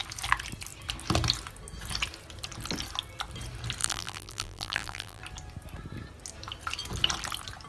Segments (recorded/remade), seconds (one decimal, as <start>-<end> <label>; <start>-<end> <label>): 0.0-3.8 recorded; 3.8-5.2 remade; 5.2-7.7 recorded

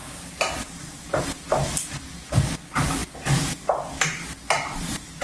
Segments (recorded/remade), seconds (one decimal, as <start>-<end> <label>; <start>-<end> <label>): 0.0-1.2 remade; 1.2-5.2 recorded

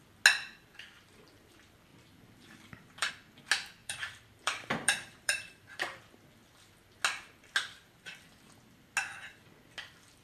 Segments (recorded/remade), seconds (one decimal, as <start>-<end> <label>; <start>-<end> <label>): 0.0-1.9 recorded; 1.9-3.1 remade; 3.1-3.8 recorded; 3.8-6.0 remade; 6.0-10.2 recorded

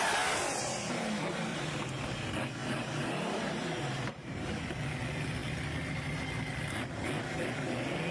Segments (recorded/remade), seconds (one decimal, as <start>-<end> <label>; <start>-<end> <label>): 0.0-1.5 recorded; 1.5-2.0 remade; 2.0-2.6 recorded; 2.6-4.5 remade; 4.5-8.1 recorded

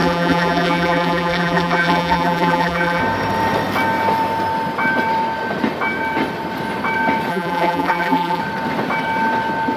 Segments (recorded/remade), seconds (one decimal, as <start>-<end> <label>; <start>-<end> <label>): 0.0-3.0 remade; 3.0-7.3 recorded; 7.3-8.4 remade; 8.4-9.8 recorded